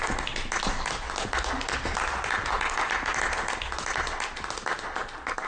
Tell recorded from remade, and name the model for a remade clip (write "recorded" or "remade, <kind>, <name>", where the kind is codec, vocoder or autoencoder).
recorded